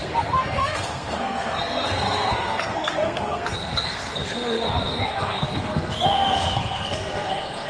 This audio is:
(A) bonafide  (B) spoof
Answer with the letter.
B